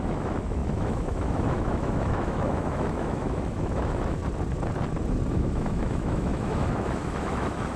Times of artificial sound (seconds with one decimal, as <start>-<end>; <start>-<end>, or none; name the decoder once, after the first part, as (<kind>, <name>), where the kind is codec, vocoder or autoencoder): 0.0-4.2 (autoencoder, DAC-VAE); 5.3-7.8